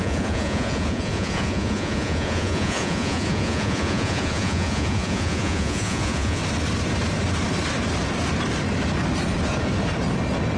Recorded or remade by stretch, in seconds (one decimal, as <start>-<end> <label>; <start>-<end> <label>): 0.0-6.4 remade; 6.4-10.6 recorded